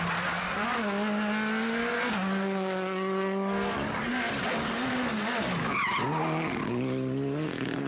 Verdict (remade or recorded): recorded